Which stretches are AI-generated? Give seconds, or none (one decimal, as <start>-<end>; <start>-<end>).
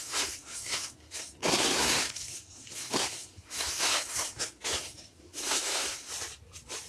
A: 0.0-6.1